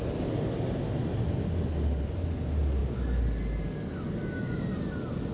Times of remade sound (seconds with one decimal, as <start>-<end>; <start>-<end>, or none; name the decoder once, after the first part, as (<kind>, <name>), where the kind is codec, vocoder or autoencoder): none